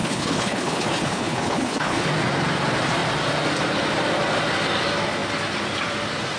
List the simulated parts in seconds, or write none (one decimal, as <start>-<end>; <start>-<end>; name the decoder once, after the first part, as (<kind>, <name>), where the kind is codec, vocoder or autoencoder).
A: 0.0-2.1 (codec, HILCodec)